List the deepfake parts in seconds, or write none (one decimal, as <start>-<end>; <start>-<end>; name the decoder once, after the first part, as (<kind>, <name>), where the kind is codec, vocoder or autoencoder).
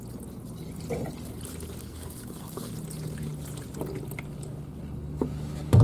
1.8-2.7 (codec, SNAC)